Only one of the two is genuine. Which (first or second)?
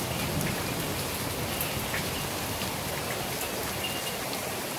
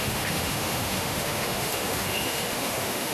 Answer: first